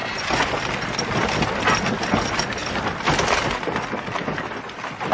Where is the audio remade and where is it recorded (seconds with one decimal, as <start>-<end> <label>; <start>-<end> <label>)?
0.0-0.6 remade; 0.6-5.1 recorded